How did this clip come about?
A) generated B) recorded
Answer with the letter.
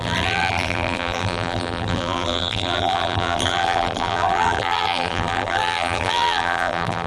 A